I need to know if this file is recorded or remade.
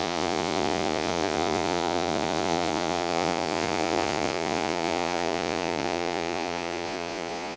remade